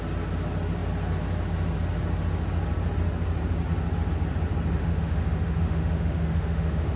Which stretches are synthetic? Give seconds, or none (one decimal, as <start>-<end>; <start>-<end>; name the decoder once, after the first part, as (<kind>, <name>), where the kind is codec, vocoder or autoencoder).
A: 4.8-7.0 (autoencoder, DAC-VAE)